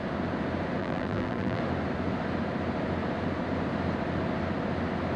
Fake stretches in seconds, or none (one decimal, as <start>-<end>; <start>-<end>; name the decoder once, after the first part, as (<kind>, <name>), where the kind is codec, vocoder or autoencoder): 0.8-1.6 (vocoder, BigVGAN v2)